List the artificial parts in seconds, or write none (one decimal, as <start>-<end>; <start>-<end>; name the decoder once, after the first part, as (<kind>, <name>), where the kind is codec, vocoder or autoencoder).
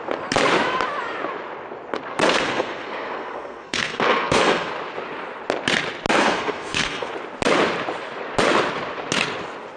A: 2.1-4.7 (codec, SNAC); 6.2-7.1